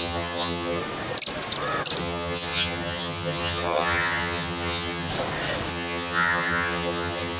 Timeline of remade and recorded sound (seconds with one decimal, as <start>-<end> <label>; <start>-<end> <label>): 0.0-0.8 remade; 0.8-2.0 recorded; 2.0-5.1 remade; 5.1-5.7 recorded; 5.7-7.4 remade